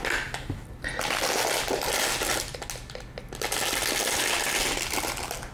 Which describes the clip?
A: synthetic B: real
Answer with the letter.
B